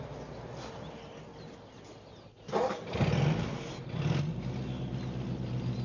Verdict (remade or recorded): recorded